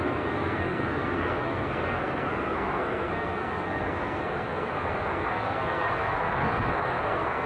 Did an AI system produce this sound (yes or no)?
yes